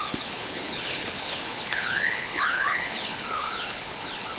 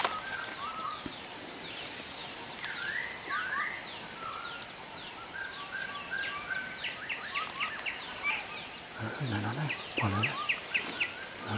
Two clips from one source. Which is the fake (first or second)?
first